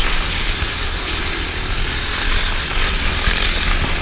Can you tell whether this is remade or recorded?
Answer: recorded